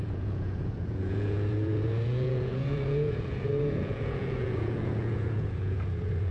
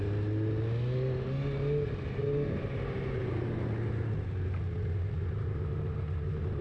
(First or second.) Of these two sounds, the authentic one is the second